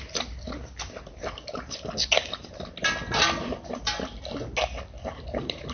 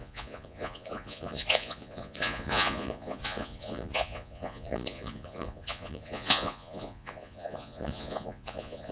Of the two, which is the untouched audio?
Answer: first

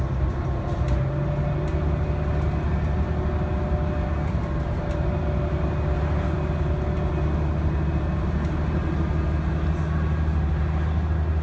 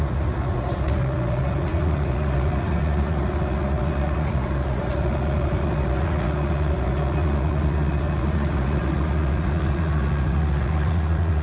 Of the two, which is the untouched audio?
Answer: first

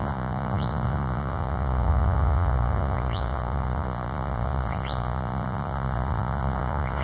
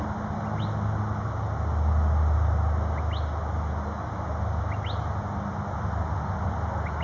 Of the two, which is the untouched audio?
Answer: second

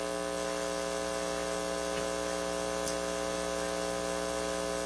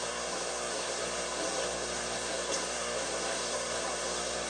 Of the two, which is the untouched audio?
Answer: first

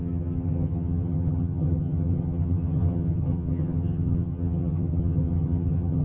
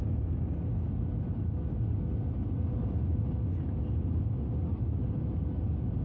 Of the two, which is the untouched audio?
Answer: second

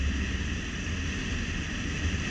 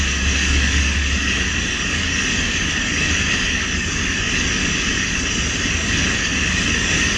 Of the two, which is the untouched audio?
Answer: first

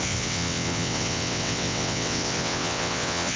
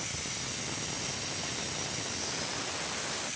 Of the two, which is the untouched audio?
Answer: second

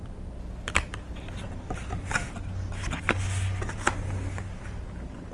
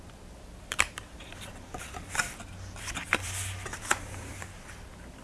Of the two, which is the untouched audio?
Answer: first